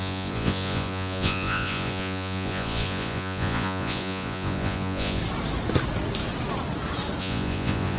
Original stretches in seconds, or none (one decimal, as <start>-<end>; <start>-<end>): 5.2-7.2